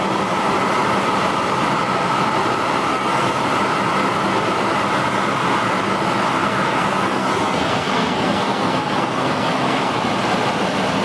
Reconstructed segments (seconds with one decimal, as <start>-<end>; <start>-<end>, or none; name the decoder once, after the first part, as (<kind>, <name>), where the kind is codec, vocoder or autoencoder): 2.9-3.4 (codec, SNAC); 6.4-9.9